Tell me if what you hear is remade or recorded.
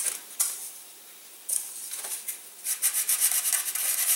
remade